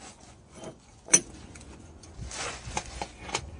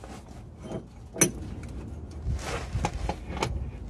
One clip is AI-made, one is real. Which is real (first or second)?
second